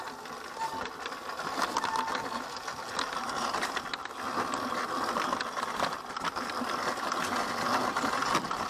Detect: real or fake real